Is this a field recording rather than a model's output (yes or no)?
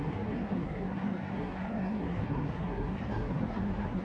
no